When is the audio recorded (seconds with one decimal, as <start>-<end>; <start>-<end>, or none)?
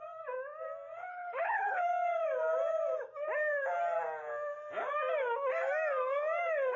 0.0-1.1; 1.8-6.8